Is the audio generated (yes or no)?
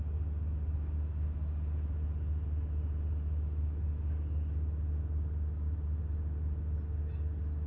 no